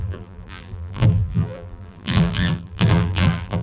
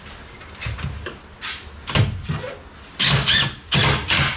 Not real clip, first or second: first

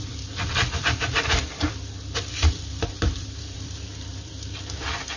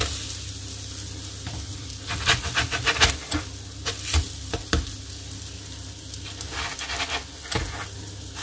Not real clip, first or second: first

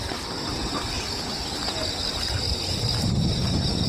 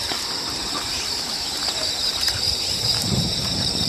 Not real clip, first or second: second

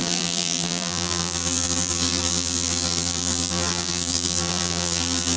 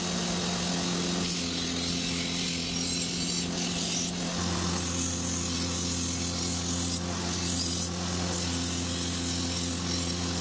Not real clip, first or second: first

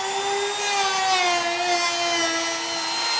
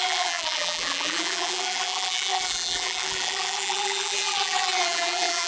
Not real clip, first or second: second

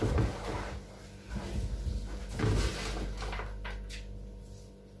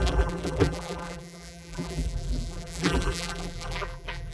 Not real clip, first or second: second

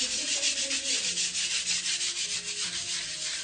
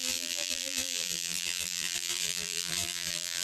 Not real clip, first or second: second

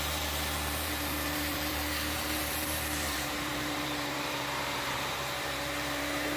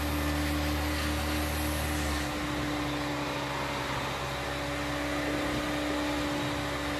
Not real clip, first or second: first